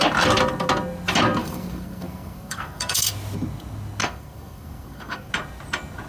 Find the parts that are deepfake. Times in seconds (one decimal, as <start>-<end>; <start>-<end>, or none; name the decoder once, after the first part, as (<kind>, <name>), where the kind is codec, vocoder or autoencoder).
1.4-3.1 (codec, SNAC); 4.0-5.3